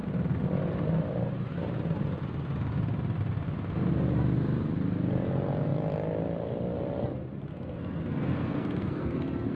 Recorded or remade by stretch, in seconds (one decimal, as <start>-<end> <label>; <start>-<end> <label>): 0.0-7.5 recorded; 7.5-9.6 remade